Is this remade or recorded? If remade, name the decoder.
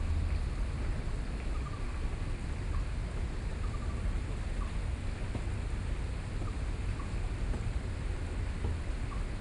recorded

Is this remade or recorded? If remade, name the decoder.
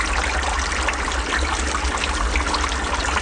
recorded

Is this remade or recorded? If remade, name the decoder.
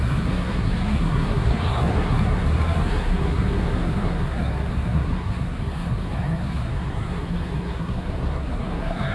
remade, codec, SNAC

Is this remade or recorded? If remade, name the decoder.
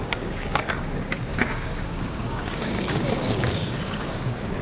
remade, codec, DAC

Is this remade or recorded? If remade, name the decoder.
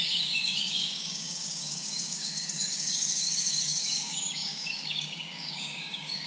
remade, codec, DAC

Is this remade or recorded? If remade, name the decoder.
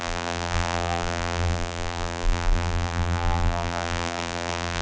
remade, vocoder, BigVGAN v2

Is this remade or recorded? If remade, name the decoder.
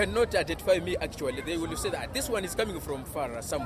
recorded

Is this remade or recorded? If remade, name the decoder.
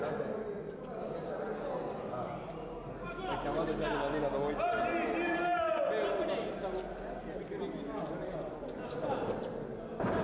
recorded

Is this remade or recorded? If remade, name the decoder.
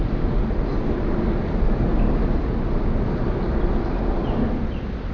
recorded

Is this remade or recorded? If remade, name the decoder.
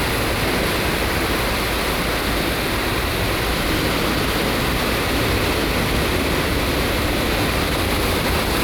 recorded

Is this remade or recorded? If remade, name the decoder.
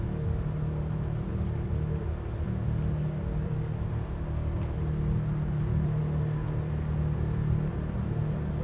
recorded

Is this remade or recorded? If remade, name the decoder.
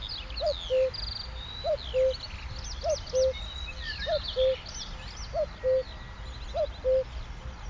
recorded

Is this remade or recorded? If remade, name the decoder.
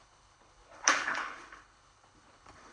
remade, codec, HILCodec